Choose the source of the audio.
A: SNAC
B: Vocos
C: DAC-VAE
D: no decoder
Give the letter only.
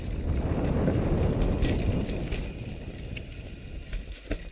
D